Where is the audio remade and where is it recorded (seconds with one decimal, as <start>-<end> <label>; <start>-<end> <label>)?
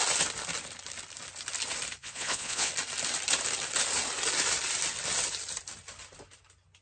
0.0-2.0 recorded; 2.0-2.7 remade; 2.7-6.8 recorded